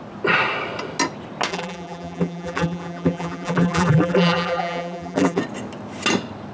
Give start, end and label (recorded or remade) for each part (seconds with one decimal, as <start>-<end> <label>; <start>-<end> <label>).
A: 0.0-1.5 recorded; 1.5-5.4 remade; 5.4-6.5 recorded